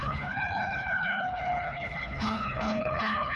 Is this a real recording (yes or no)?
no